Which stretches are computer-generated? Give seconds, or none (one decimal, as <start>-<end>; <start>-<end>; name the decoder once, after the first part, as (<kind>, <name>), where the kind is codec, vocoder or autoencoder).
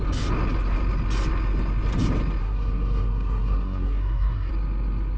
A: 2.4-4.5 (codec, SNAC)